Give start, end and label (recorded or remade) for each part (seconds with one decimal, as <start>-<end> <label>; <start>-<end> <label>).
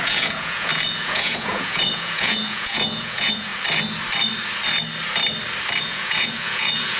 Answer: 0.0-3.5 remade; 3.5-5.8 recorded; 5.8-7.0 remade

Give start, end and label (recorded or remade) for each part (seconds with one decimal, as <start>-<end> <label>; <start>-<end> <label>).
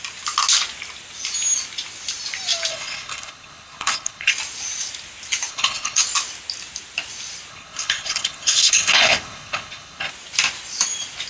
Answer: 0.0-2.7 recorded; 2.7-4.3 remade; 4.3-5.5 recorded; 5.5-6.0 remade; 6.0-7.5 recorded; 7.5-10.1 remade; 10.1-11.3 recorded